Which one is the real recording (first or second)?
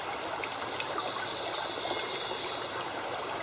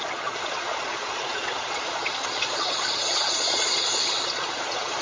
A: first